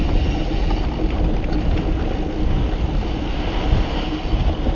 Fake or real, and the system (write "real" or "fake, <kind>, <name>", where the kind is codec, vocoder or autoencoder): real